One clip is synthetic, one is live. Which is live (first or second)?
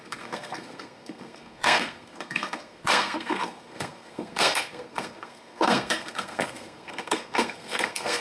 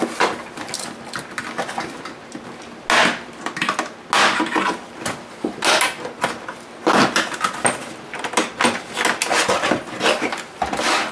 second